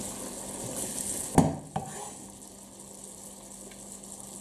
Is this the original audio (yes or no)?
yes